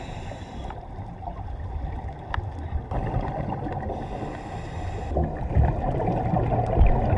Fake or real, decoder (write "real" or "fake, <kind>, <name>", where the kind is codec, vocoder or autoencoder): real